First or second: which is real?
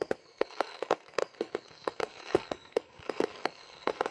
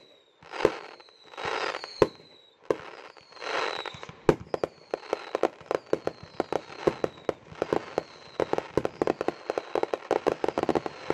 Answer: second